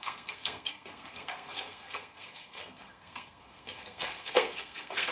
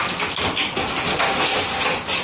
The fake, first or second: first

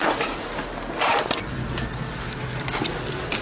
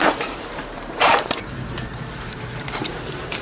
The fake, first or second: second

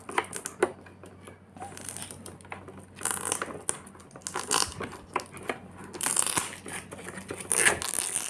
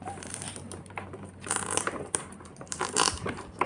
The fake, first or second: second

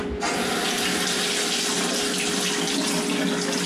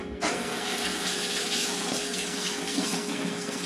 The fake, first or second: second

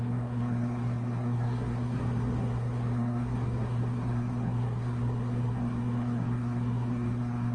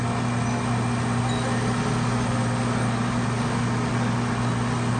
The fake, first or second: first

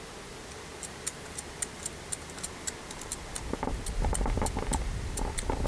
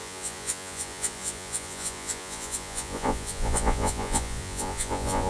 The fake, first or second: second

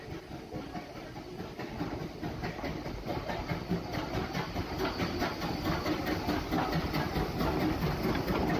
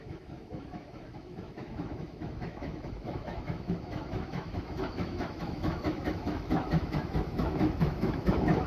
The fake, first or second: second